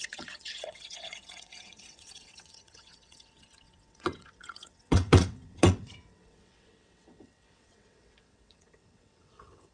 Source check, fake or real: fake